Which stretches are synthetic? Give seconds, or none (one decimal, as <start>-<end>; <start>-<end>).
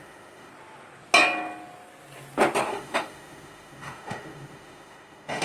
0.0-0.5; 2.7-5.4